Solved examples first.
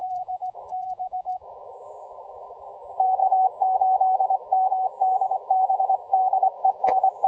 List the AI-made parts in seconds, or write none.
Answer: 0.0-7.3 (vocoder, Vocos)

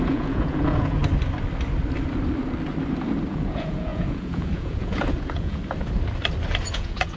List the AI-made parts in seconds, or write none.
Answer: 0.0-1.0 (vocoder, Vocos); 3.3-5.6; 6.7-7.2

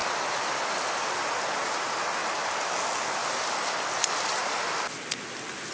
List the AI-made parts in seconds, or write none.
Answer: none

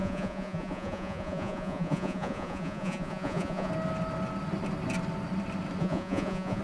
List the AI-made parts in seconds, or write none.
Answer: 0.0-3.7 (vocoder, Vocos); 5.8-6.6

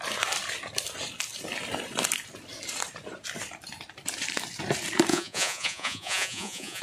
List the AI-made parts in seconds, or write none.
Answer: 5.1-6.8 (vocoder, Vocos)

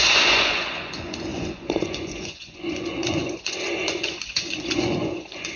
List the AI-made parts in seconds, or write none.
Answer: 0.0-5.6 (vocoder, Vocos)